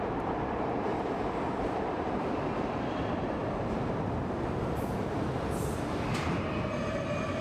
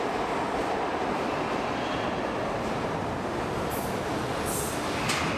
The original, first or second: second